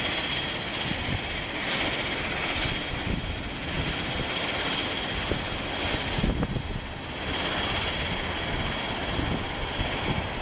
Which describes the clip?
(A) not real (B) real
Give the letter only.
B